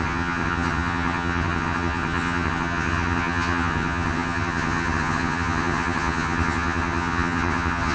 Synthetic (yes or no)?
yes